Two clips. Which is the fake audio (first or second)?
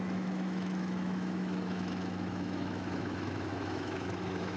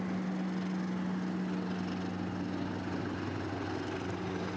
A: first